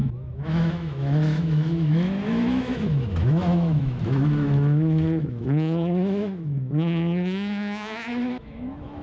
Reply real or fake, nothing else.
fake